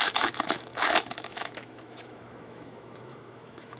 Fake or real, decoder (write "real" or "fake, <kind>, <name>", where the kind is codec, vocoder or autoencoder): fake, autoencoder, DAC-VAE